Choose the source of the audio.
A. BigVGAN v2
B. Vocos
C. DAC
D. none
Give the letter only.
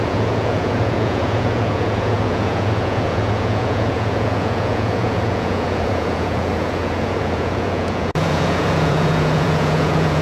B